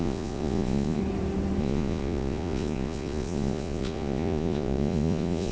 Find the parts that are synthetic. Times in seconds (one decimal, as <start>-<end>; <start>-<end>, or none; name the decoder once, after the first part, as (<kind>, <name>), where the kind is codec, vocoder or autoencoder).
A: 0.0-1.0 (vocoder, Vocos); 1.6-5.5